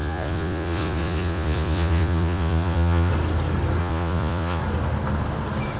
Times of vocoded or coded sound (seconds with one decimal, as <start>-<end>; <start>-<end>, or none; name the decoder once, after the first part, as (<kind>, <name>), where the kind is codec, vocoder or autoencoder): 0.0-3.1 (vocoder, Vocos); 3.8-4.6